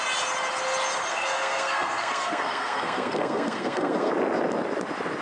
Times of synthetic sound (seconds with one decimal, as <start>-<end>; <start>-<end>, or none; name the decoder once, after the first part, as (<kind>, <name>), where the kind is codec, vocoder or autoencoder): 1.1-4.1 (codec, SNAC)